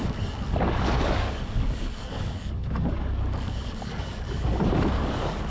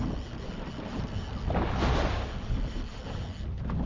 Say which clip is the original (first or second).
second